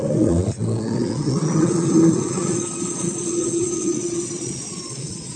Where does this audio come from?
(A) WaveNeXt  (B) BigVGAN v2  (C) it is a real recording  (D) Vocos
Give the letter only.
D